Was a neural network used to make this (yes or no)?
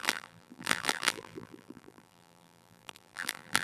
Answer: yes